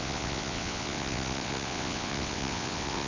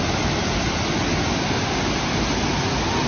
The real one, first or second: second